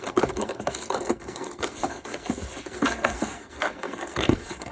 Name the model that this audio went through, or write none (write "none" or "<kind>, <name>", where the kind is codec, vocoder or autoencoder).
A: codec, SNAC